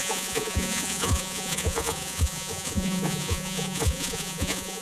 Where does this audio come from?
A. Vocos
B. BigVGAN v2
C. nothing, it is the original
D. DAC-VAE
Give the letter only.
A